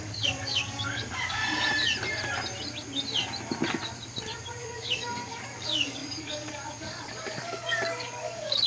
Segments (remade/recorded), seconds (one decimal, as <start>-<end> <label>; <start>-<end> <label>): 0.0-1.4 remade; 1.4-4.6 recorded; 4.6-8.7 remade